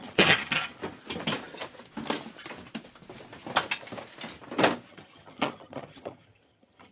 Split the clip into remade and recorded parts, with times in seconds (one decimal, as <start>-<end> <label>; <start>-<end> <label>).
0.0-0.8 remade; 0.8-4.9 recorded; 4.9-6.9 remade